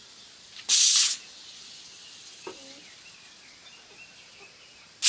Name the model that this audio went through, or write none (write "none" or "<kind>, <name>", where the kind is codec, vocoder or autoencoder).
none